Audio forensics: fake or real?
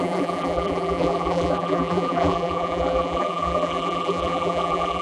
fake